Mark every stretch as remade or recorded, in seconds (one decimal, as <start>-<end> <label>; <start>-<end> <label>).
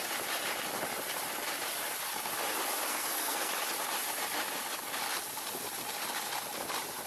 0.0-2.9 recorded; 2.9-3.5 remade; 3.5-7.1 recorded